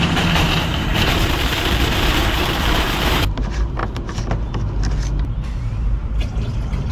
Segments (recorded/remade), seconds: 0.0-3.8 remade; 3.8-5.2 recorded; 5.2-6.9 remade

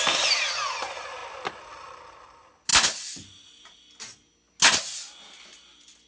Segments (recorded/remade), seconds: 0.0-6.1 recorded

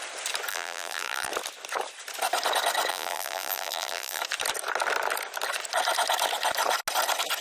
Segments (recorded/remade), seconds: 0.0-0.5 recorded; 0.5-1.3 remade; 1.3-2.9 recorded; 2.9-4.2 remade; 4.2-7.4 recorded

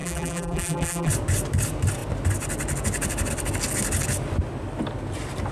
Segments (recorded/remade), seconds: 0.0-1.1 remade; 1.1-5.5 recorded

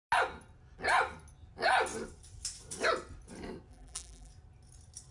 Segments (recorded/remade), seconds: 0.0-3.7 recorded; 3.7-4.3 remade; 4.3-5.1 recorded

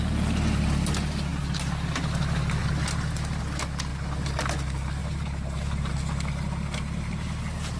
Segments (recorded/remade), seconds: 0.0-3.9 recorded; 3.9-4.5 remade; 4.5-5.0 recorded; 5.0-5.9 remade; 5.9-7.8 recorded

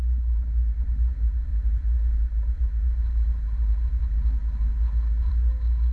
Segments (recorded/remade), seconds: 0.0-1.5 recorded; 1.5-3.9 remade; 3.9-5.9 recorded

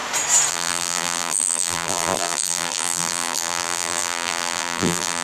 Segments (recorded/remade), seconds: 0.0-0.5 recorded; 0.5-5.2 remade